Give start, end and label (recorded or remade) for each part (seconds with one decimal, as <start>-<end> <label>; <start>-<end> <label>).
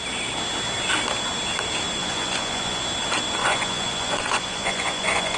0.0-2.0 recorded; 2.0-2.8 remade; 2.8-3.4 recorded; 3.4-5.4 remade